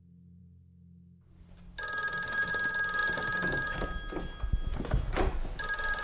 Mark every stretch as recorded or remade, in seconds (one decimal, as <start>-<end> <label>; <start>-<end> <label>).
0.0-3.0 recorded; 3.0-3.7 remade; 3.7-6.0 recorded